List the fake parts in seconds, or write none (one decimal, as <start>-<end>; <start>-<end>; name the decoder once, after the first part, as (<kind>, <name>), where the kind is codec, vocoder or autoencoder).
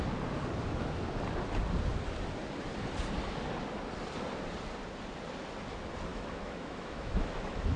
6.1-7.8 (autoencoder, DAC-VAE)